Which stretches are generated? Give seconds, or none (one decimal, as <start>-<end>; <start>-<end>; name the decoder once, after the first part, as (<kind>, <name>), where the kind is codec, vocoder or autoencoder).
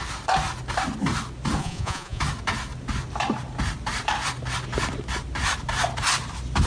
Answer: 1.6-2.2 (vocoder, Vocos)